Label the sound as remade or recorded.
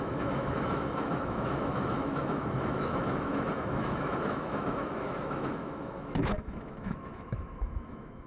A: remade